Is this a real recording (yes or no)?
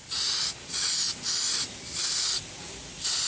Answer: yes